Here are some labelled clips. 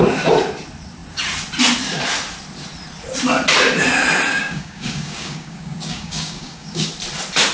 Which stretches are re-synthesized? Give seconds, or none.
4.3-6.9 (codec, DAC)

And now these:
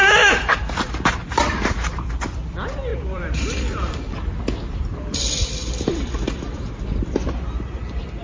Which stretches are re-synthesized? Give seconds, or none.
0.0-2.1 (vocoder, BigVGAN v2); 2.9-7.3

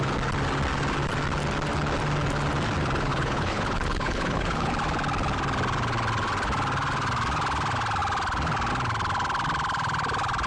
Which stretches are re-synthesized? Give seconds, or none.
3.1-4.7 (codec, HILCodec)

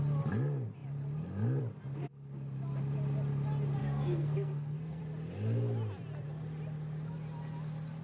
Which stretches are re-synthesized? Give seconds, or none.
3.8-5.0 (codec, SNAC)

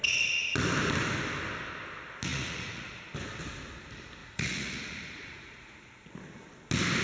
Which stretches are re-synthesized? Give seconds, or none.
2.3-3.0 (vocoder, Vocos); 4.2-6.1

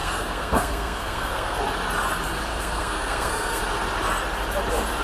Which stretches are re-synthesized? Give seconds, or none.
0.0-1.6 (codec, SNAC); 2.5-3.6